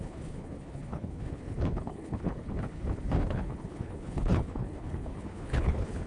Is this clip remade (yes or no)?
yes